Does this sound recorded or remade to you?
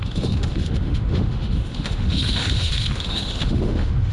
remade